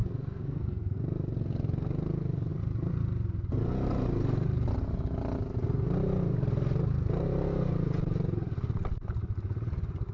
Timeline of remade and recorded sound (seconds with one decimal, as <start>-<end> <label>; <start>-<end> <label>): 0.0-1.0 remade; 1.0-10.1 recorded